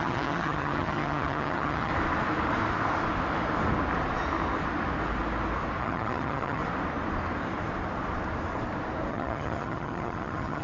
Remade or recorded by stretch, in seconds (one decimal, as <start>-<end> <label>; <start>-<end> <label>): 0.0-1.9 remade; 1.9-5.8 recorded; 5.8-6.6 remade; 6.6-9.1 recorded; 9.1-10.6 remade